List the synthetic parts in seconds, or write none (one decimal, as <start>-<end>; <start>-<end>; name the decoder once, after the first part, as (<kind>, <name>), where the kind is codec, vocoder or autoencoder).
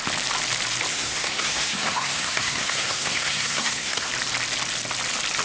0.9-4.1 (codec, SNAC)